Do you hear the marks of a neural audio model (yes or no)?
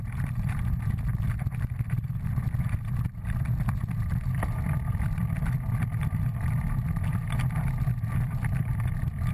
no